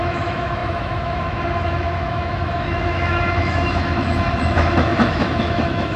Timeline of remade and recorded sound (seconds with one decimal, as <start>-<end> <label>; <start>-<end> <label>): 0.0-6.0 remade